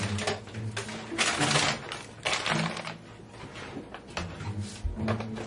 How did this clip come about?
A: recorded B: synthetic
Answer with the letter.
A